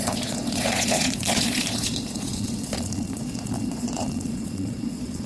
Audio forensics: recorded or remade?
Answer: remade